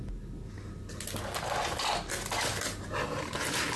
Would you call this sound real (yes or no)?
yes